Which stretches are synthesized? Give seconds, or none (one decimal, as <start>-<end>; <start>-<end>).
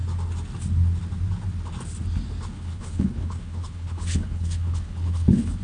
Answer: 2.5-5.6